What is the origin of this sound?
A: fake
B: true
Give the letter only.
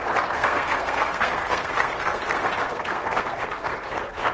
A